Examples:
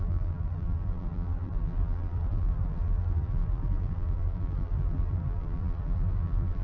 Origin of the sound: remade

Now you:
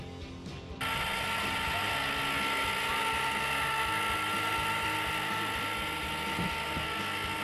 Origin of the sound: recorded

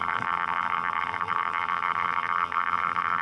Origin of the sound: remade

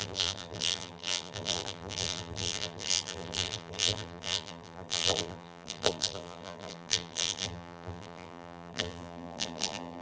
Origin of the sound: remade